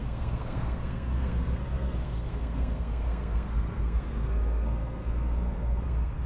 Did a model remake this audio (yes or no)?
yes